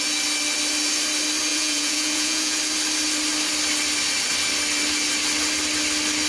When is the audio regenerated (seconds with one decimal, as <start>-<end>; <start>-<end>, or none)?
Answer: 1.5-2.6